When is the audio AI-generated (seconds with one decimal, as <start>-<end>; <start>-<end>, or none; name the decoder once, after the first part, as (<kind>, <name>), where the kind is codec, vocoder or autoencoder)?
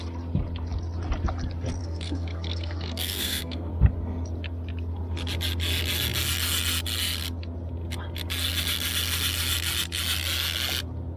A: 1.8-3.7 (codec, SNAC)